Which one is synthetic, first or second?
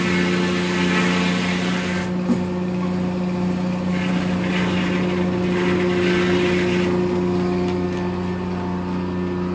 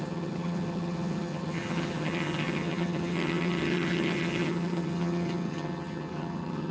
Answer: second